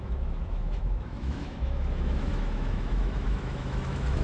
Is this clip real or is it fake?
fake